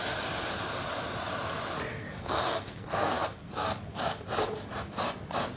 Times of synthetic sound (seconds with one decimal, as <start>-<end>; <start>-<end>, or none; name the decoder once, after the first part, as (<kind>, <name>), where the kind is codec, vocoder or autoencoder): 1.9-4.2 (codec, SNAC)